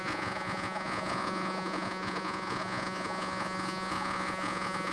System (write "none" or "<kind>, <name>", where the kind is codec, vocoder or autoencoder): vocoder, Vocos